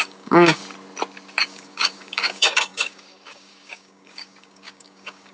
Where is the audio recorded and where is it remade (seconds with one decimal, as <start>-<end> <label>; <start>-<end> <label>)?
0.0-0.6 remade; 0.6-1.4 recorded; 1.4-5.3 remade